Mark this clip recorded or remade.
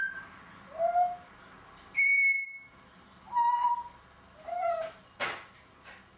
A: recorded